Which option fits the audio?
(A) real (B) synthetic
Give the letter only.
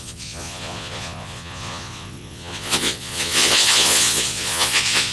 B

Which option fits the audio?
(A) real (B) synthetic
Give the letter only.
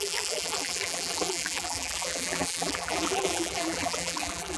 B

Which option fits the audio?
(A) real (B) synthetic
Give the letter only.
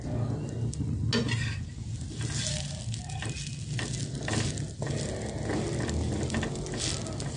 A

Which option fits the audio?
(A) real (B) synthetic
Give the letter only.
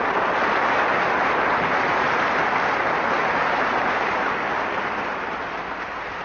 A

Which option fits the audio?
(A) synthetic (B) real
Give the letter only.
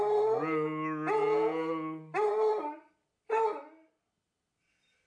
B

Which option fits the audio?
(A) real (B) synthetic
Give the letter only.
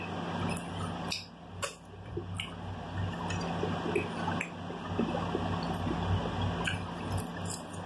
A